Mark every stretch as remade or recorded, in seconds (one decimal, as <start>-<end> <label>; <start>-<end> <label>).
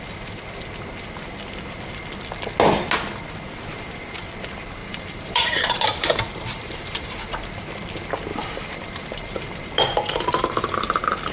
0.0-4.8 recorded; 4.8-7.3 remade; 7.3-8.3 recorded; 8.3-11.3 remade